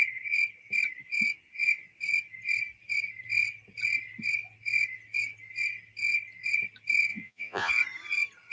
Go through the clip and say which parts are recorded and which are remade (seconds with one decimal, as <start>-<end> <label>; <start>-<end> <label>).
0.0-7.1 recorded; 7.1-7.7 remade; 7.7-8.5 recorded